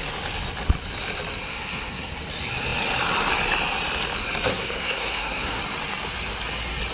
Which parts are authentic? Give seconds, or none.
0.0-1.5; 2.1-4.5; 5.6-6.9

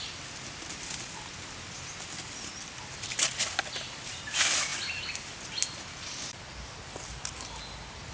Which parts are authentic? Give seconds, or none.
0.0-8.1

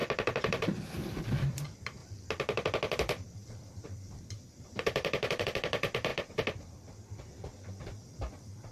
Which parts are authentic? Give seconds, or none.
0.0-0.8; 2.0-3.0; 6.1-7.7

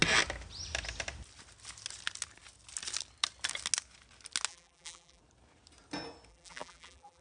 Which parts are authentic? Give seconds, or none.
0.0-4.5; 5.2-6.3

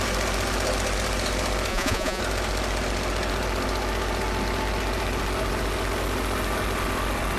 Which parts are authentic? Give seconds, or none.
0.0-1.7; 2.2-7.4

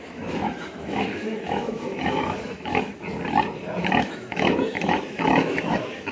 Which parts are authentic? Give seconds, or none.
2.9-3.8

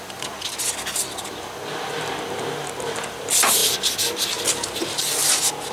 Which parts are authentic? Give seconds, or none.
0.0-5.7